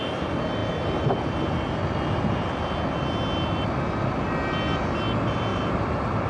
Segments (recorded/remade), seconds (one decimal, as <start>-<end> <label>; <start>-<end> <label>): 0.0-5.5 recorded; 5.5-6.3 remade